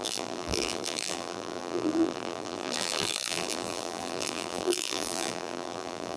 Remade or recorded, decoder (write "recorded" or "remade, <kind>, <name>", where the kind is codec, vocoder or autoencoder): remade, vocoder, BigVGAN v2